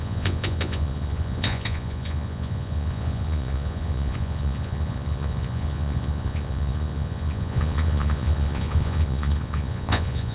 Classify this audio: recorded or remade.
remade